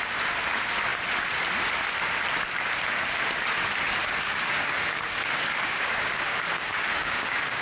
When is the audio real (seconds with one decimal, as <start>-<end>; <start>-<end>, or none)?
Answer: 0.0-4.0